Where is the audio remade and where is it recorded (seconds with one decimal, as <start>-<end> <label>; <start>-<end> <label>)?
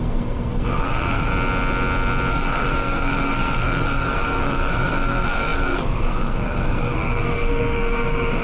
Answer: 0.0-1.3 remade; 1.3-2.3 recorded; 2.3-8.4 remade